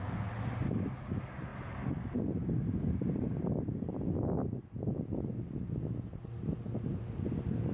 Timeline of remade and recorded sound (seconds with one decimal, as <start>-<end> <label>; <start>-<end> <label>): 0.0-7.7 recorded